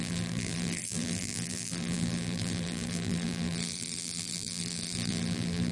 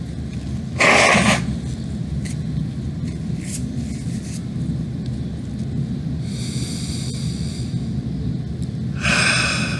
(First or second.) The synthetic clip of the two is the first